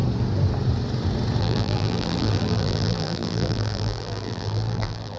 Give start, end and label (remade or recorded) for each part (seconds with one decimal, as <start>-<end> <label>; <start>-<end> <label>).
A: 0.0-1.4 recorded; 1.4-5.2 remade